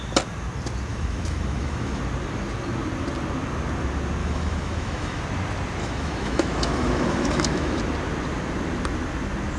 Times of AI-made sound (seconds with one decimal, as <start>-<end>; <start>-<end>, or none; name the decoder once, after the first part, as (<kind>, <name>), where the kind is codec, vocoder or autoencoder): 0.9-2.0 (autoencoder, DAC-VAE); 4.2-5.2; 5.8-7.8